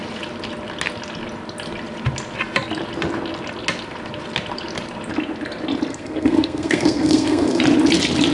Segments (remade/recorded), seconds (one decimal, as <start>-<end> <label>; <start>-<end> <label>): 0.0-5.9 recorded; 5.9-7.6 remade; 7.6-8.3 recorded